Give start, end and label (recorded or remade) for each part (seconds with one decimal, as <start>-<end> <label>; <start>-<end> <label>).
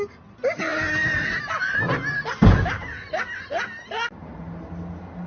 0.0-5.3 recorded